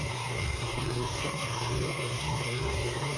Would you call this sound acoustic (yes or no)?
no